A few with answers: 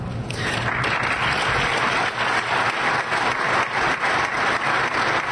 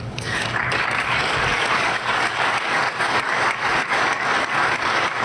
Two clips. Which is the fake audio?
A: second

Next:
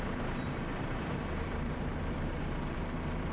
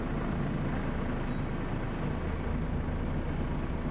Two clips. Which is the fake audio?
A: first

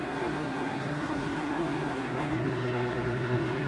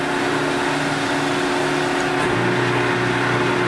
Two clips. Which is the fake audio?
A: first